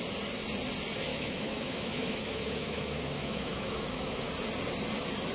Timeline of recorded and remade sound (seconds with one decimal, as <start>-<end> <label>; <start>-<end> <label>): 0.0-1.1 recorded; 1.1-4.3 remade; 4.3-5.3 recorded